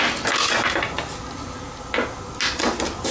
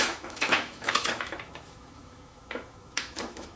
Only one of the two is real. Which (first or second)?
first